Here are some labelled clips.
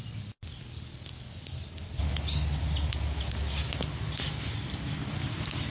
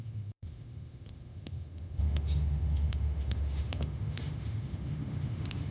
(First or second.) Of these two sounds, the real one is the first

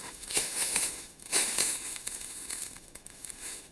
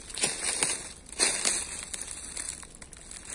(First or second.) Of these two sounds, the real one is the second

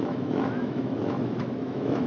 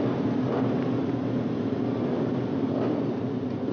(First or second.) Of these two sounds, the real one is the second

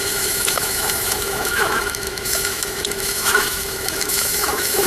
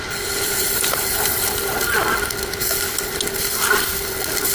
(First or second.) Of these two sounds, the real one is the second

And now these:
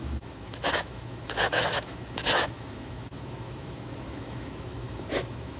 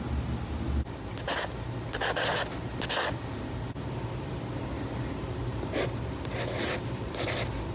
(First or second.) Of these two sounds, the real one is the second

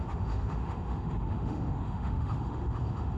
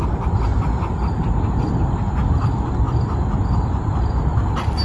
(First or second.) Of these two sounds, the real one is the second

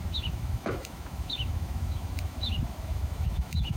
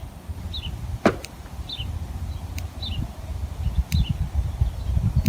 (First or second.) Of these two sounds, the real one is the second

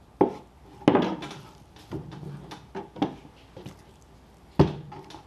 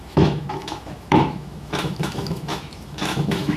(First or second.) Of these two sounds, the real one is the first